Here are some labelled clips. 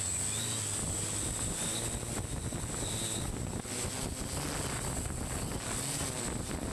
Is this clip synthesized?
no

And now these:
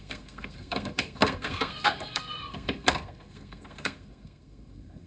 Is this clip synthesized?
yes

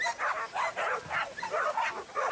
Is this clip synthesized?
no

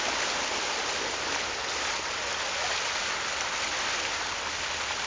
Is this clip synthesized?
no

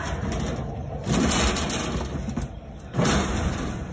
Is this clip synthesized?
no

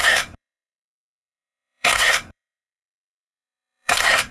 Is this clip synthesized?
yes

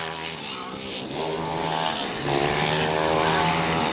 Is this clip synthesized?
no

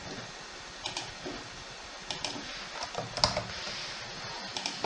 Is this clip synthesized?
no